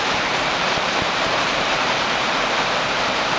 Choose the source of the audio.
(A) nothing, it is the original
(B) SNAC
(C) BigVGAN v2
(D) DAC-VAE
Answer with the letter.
C